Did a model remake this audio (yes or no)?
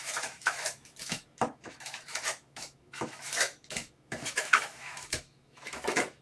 yes